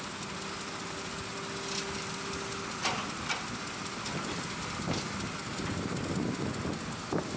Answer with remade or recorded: recorded